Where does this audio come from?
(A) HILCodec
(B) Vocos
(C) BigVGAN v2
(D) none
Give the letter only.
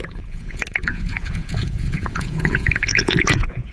B